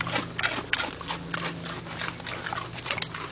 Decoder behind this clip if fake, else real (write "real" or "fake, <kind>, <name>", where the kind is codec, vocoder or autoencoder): real